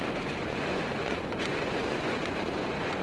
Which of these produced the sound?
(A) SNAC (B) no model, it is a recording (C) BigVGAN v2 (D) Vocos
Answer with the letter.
D